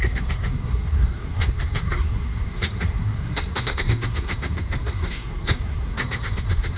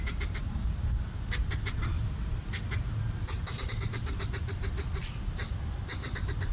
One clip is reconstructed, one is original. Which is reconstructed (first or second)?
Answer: first